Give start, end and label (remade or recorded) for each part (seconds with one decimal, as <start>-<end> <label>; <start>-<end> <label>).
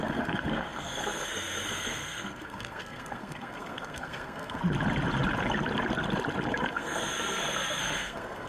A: 0.0-4.6 remade; 4.6-6.7 recorded; 6.7-8.5 remade